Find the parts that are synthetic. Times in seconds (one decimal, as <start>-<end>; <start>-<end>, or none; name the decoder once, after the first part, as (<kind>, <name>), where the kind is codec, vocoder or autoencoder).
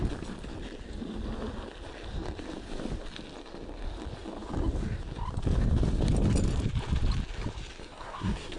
7.8-8.6 (codec, SNAC)